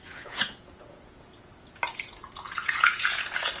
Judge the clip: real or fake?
fake